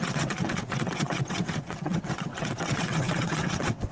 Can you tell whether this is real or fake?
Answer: fake